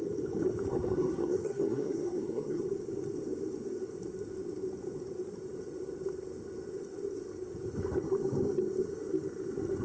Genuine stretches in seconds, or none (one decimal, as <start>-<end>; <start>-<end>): 0.0-0.7; 2.6-9.8